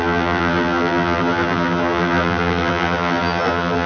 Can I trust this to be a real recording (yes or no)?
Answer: no